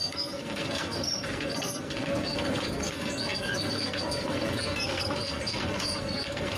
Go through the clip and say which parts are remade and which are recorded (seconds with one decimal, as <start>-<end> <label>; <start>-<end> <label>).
0.0-6.6 remade